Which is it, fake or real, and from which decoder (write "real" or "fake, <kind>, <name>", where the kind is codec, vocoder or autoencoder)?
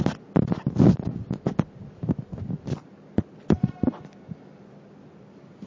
real